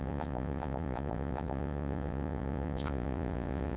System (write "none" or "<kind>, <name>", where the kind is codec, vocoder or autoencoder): vocoder, Vocos